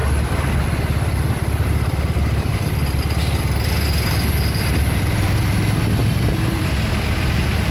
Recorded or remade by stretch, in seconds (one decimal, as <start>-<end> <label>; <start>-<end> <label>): 0.0-6.0 recorded; 6.0-6.7 remade; 6.7-7.7 recorded